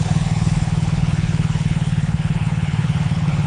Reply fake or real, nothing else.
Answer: fake